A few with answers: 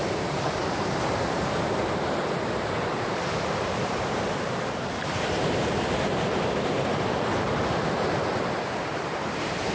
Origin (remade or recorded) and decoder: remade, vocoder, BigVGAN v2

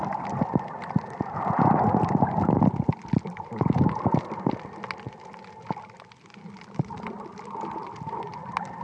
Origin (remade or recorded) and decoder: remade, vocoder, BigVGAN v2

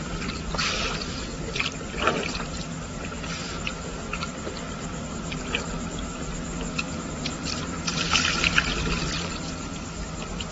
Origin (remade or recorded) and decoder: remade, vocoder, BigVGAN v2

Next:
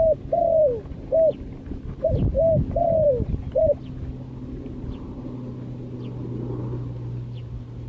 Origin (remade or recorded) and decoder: remade, vocoder, BigVGAN v2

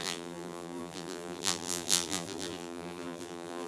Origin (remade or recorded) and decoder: remade, vocoder, BigVGAN v2